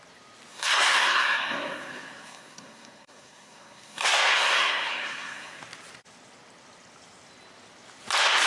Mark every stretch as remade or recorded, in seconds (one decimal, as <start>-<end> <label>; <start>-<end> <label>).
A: 0.0-0.5 recorded; 0.5-5.6 remade; 5.6-8.5 recorded